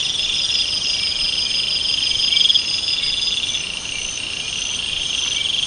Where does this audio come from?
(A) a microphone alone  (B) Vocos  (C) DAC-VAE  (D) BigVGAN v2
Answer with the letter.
A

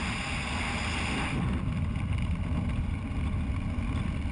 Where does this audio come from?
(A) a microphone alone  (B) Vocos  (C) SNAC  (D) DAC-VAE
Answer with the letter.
A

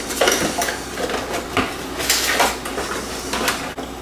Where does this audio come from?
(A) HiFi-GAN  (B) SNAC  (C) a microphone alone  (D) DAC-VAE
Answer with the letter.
C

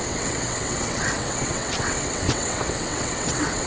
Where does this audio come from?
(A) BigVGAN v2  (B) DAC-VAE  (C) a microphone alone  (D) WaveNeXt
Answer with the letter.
D